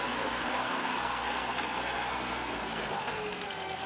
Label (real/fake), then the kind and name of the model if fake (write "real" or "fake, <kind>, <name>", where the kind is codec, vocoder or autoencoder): fake, codec, SNAC